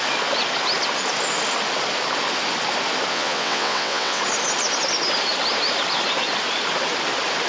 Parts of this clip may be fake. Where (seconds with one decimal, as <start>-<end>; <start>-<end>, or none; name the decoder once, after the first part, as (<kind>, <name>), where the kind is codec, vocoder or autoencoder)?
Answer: 3.1-4.2 (vocoder, WaveNeXt)